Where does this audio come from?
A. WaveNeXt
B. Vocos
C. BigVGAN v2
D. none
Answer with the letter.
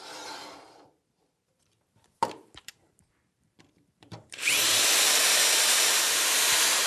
C